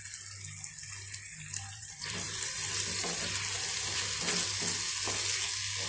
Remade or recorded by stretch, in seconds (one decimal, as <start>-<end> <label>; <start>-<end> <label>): 0.0-0.8 recorded; 0.8-4.2 remade; 4.2-5.9 recorded